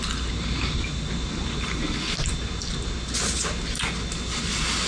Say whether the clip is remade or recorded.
recorded